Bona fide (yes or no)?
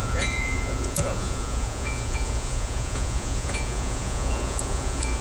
no